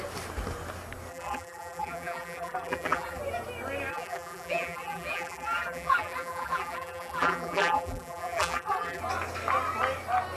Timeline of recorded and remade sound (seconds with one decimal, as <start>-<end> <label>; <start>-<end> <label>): 0.0-1.1 recorded; 1.1-3.2 remade; 3.2-3.9 recorded; 3.9-9.0 remade; 9.0-10.4 recorded